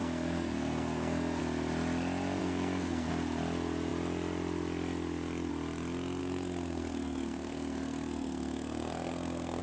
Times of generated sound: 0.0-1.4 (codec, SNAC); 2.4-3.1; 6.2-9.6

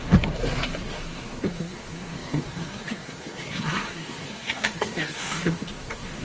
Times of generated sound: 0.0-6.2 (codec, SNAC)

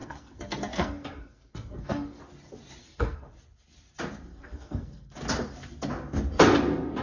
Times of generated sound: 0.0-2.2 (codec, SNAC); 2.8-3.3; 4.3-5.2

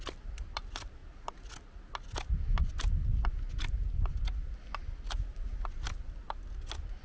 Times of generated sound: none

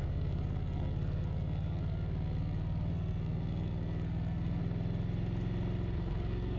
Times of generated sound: 0.0-4.6 (codec, SNAC); 6.0-6.6

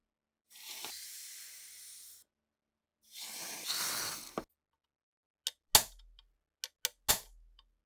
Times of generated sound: none

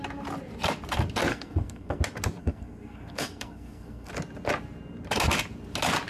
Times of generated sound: 1.3-2.0 (codec, SNAC); 2.4-4.1

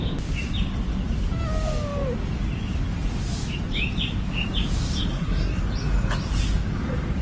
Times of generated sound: 5.1-5.6 (codec, SNAC)